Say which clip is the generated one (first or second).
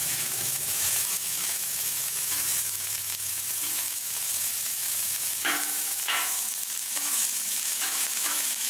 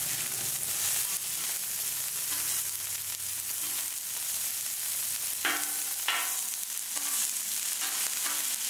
first